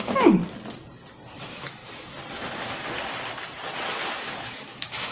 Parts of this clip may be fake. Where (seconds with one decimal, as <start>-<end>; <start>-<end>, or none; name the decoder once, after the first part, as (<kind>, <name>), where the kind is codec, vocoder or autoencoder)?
0.0-0.4 (autoencoder, DAC-VAE); 1.4-1.8; 4.3-5.1

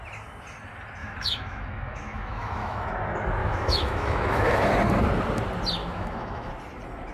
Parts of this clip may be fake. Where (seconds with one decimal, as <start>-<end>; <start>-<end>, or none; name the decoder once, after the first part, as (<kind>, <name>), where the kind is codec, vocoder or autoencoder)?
1.0-2.9 (autoencoder, DAC-VAE); 3.4-4.7; 5.8-6.5